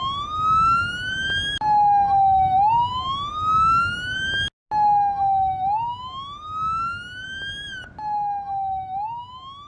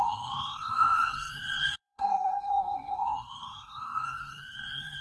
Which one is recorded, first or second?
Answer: first